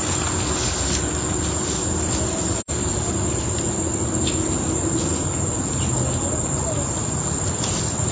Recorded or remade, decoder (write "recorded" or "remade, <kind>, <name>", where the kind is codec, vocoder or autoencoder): recorded